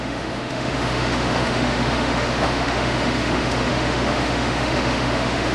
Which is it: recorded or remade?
remade